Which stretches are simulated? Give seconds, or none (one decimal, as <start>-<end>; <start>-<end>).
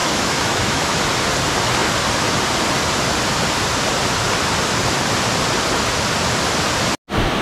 0.0-1.0